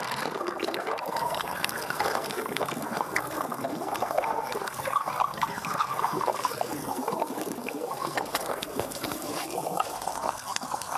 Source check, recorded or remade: remade